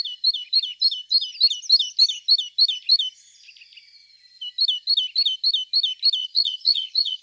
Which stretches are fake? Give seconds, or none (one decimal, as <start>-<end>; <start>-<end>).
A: 6.2-7.2